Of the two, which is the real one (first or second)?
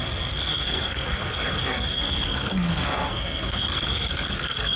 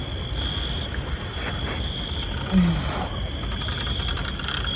second